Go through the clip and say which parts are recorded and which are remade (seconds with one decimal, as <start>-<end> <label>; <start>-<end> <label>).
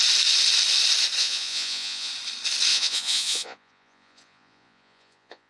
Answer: 0.0-1.2 recorded; 1.2-2.1 remade; 2.1-2.7 recorded; 2.7-5.5 remade